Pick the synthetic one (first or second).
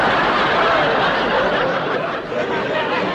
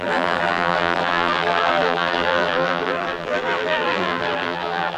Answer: second